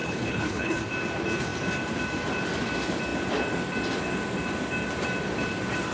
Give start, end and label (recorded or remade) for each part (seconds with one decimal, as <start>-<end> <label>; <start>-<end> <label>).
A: 0.0-0.8 remade; 0.8-5.9 recorded

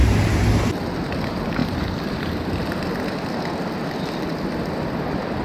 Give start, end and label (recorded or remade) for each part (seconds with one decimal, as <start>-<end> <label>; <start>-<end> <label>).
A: 0.0-5.4 recorded

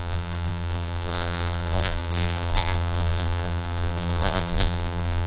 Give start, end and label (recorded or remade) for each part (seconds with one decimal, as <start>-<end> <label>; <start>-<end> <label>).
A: 0.0-5.3 remade

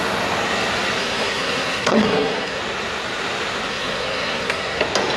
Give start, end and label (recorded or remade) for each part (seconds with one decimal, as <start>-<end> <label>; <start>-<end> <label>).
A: 0.0-1.0 recorded; 1.0-2.6 remade; 2.6-3.7 recorded; 3.7-4.8 remade; 4.8-5.2 recorded

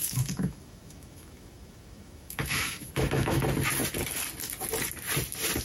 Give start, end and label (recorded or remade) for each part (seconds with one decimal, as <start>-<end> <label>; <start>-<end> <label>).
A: 0.0-3.4 remade; 3.4-5.6 recorded